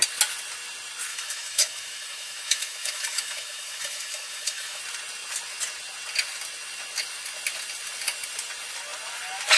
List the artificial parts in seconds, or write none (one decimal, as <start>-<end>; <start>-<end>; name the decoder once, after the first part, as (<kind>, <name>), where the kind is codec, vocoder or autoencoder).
1.1-4.8 (autoencoder, DAC-VAE)